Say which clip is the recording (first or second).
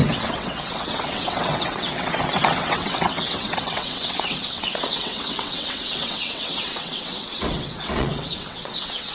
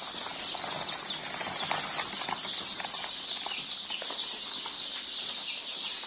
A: second